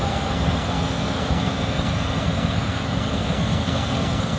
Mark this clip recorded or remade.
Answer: remade